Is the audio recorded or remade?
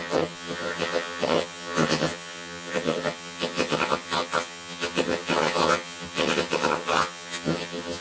remade